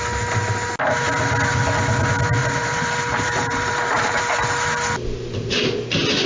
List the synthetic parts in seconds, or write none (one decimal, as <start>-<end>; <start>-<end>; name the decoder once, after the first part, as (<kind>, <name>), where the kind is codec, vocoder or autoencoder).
2.4-4.2 (vocoder, BigVGAN v2)